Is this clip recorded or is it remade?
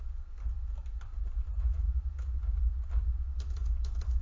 recorded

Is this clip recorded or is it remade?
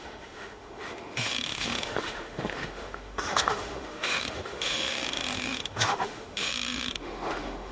remade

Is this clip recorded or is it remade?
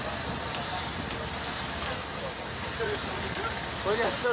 recorded